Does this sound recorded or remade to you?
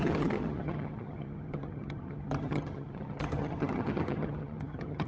remade